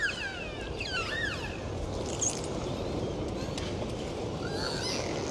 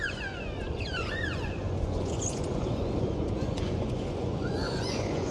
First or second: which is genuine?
first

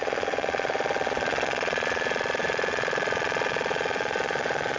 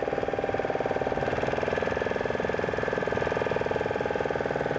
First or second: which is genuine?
second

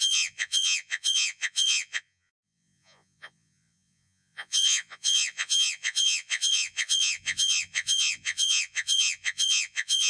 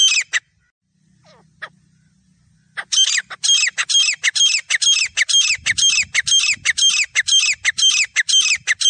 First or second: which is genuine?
second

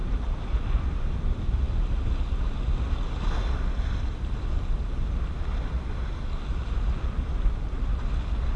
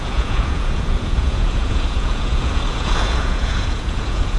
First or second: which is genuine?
first